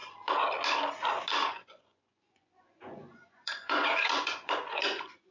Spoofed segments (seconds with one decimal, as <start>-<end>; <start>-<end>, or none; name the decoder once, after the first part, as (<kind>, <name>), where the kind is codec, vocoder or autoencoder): 1.5-5.3 (vocoder, Vocos)